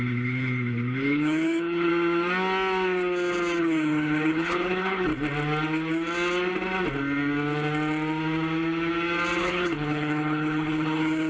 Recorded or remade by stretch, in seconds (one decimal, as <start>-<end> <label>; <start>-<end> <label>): 0.0-1.9 remade; 1.9-3.6 recorded; 3.6-5.1 remade; 5.1-9.4 recorded; 9.4-11.3 remade